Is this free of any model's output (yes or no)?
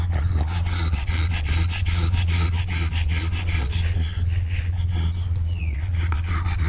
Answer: no